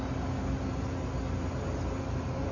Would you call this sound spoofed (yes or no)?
no